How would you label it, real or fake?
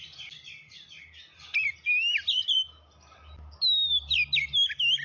real